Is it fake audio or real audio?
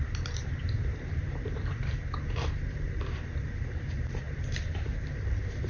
fake